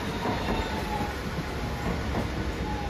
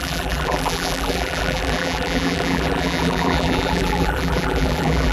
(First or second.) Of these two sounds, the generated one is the second